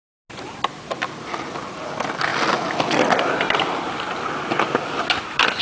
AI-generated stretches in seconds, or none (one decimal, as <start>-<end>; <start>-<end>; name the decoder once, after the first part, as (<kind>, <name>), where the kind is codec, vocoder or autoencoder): none